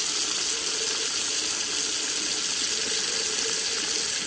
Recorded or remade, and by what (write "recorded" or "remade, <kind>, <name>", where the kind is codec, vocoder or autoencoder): recorded